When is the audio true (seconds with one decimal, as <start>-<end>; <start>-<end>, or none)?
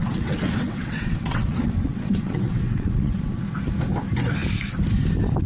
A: 3.2-5.5